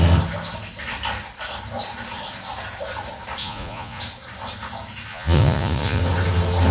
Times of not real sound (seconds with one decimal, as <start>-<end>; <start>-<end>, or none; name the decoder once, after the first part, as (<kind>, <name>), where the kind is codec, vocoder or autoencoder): 3.4-4.0 (vocoder, Vocos); 5.1-6.0